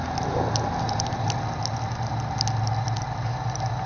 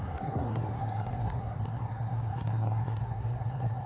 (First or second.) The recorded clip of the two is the first